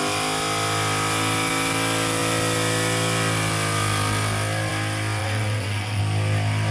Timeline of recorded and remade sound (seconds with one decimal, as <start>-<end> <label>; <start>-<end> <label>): 0.0-5.2 recorded; 5.2-6.0 remade; 6.0-6.7 recorded